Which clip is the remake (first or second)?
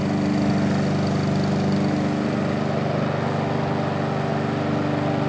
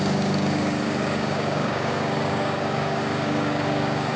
second